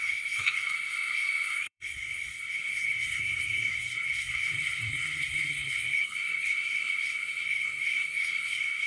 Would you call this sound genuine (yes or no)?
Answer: no